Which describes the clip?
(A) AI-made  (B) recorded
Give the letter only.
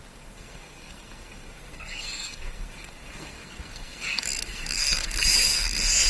A